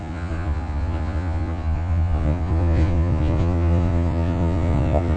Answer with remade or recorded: remade